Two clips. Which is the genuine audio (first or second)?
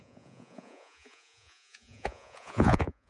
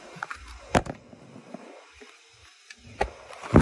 second